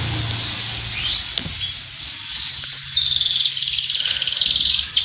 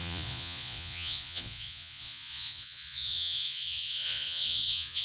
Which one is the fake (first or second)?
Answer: second